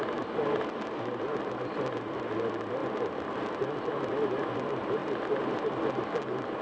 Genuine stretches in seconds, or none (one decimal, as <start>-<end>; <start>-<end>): 0.0-6.6